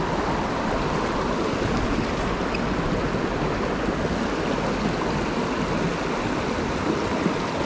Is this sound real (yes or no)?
yes